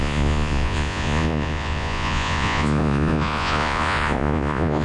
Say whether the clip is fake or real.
fake